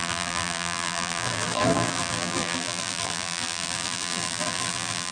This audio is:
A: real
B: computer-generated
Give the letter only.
B